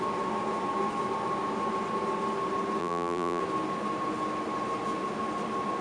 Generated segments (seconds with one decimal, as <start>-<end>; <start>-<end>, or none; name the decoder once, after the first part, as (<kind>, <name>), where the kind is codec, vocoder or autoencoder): 2.8-3.4 (vocoder, BigVGAN v2)